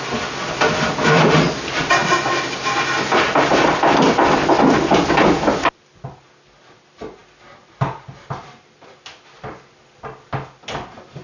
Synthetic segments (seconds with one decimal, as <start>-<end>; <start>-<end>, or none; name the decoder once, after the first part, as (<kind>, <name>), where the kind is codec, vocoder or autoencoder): none